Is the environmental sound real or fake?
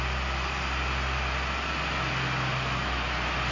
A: real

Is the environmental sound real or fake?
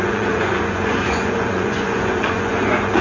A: fake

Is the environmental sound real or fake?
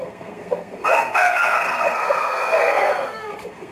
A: fake